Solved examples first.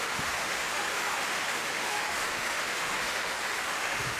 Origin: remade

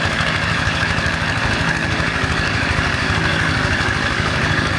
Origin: remade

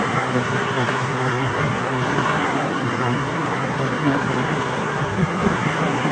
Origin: remade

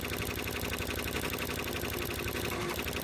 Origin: recorded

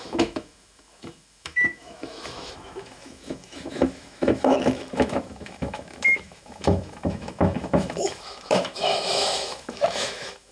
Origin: remade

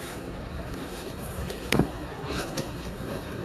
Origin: remade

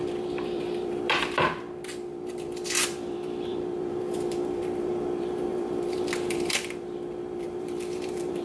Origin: remade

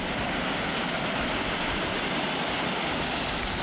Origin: recorded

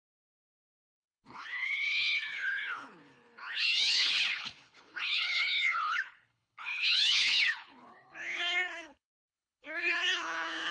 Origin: remade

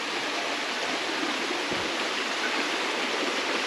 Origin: recorded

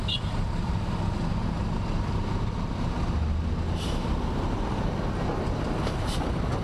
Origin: recorded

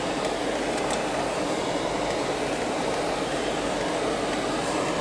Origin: recorded